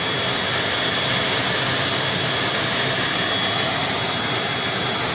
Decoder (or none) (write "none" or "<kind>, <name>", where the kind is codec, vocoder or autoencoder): none